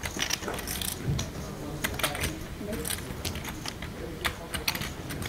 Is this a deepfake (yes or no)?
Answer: no